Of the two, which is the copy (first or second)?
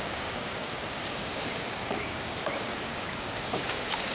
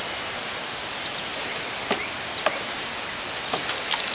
first